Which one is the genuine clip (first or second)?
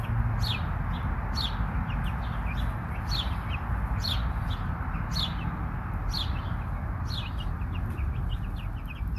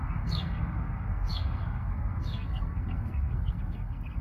first